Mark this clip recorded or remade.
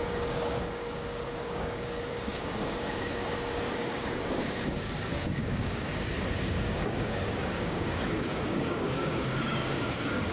remade